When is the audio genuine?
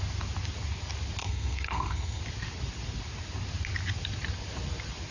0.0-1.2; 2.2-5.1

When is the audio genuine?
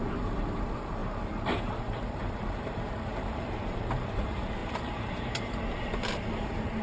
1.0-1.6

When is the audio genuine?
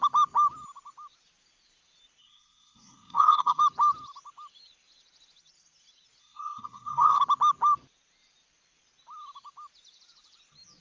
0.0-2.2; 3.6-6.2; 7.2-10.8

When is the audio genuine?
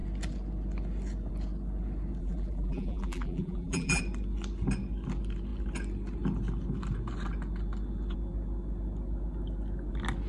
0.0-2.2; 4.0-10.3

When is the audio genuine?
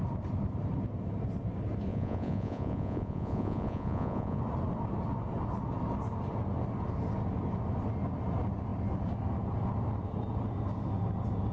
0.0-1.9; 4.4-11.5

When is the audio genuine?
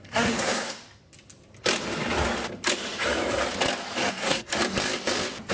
0.8-4.1; 4.5-5.5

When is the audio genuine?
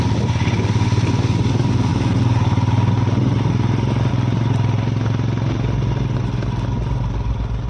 0.0-7.7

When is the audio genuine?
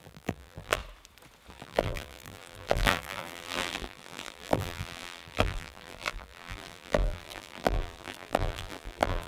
0.8-1.5